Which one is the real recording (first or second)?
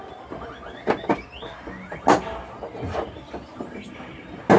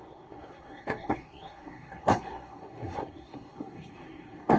first